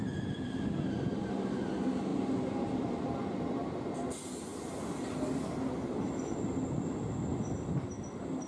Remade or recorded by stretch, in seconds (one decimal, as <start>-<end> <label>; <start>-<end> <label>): 0.0-8.5 recorded